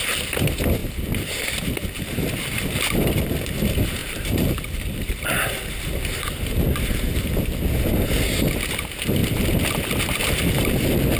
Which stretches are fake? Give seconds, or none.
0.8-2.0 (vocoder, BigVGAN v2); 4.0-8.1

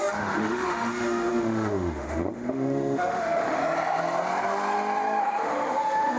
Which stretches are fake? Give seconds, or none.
0.0-3.6 (autoencoder, DAC-VAE); 5.2-6.2

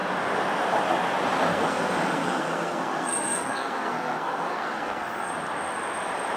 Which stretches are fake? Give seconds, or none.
1.5-5.3 (codec, SNAC)